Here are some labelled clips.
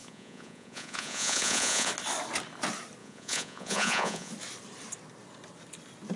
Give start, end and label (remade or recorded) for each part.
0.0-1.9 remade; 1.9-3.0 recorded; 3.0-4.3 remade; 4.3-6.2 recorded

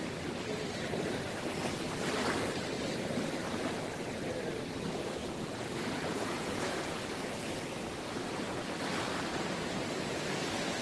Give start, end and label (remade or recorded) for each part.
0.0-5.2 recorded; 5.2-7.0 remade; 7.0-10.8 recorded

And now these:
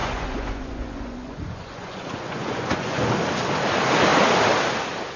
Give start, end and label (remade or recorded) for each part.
0.0-3.1 remade; 3.1-5.2 recorded

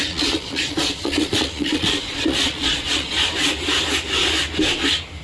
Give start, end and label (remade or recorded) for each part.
0.0-3.1 remade; 3.1-5.2 recorded